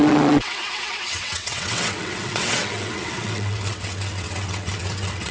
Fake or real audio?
fake